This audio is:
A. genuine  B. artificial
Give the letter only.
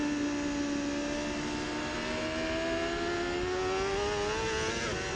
A